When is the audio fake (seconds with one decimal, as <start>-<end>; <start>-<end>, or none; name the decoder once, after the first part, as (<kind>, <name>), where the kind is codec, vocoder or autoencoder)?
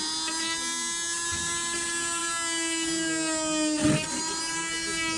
none